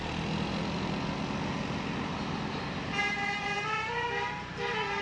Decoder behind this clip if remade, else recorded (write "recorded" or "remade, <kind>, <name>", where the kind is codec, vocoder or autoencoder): recorded